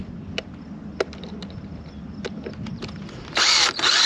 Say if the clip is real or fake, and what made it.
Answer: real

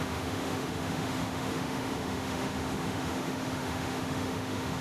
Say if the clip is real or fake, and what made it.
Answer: fake, autoencoder, DAC-VAE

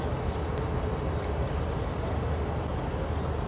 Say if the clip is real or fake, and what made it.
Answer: real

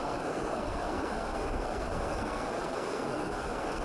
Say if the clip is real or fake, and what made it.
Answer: fake, codec, SNAC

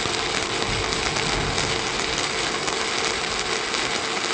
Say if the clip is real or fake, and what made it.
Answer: real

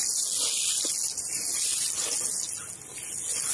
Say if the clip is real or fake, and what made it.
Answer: real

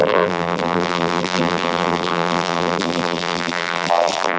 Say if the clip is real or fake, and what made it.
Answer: fake, vocoder, BigVGAN v2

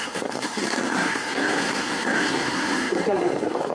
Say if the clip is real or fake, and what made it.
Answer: fake, codec, SNAC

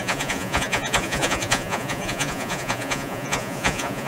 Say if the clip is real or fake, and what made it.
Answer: fake, vocoder, Vocos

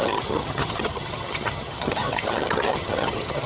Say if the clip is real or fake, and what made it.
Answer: fake, vocoder, HiFi-GAN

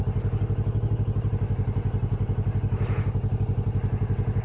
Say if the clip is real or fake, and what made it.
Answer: real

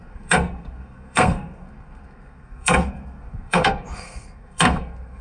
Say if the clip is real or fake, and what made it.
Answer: fake, codec, SNAC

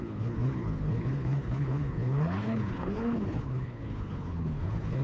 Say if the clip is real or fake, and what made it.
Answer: fake, codec, HILCodec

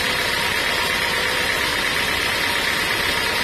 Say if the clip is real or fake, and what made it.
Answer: real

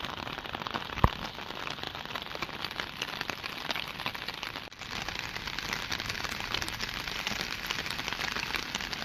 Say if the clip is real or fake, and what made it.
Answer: real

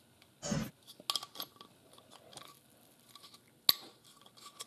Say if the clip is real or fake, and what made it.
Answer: real